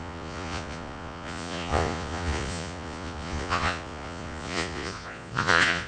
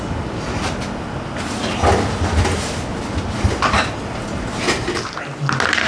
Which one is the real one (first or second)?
second